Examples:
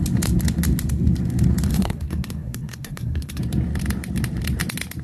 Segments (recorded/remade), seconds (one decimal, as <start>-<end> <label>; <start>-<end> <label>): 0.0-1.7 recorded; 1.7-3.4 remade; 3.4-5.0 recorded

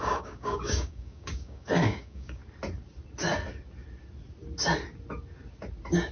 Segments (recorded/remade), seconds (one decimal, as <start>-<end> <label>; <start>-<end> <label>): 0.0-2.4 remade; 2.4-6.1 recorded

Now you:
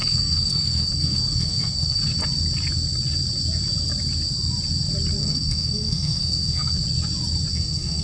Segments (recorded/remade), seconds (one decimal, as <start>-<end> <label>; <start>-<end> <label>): 0.0-2.0 remade; 2.0-5.2 recorded; 5.2-6.8 remade; 6.8-7.5 recorded; 7.5-8.0 remade